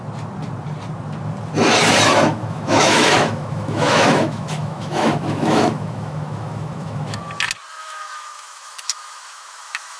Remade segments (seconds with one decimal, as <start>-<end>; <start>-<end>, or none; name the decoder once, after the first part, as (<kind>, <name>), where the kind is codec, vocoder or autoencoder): 2.3-7.2 (autoencoder, DAC-VAE); 7.7-10.0